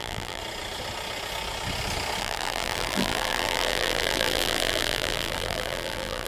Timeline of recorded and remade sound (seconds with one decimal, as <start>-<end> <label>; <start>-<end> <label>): 0.0-0.4 remade; 0.4-2.2 recorded; 2.2-6.3 remade